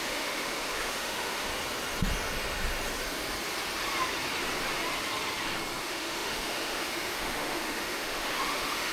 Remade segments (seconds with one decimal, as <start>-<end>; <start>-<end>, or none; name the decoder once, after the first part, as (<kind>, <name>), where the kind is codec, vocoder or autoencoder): 0.0-1.5 (autoencoder, DAC-VAE); 5.8-8.9